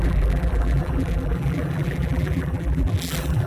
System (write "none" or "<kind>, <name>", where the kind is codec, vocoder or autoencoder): vocoder, BigVGAN v2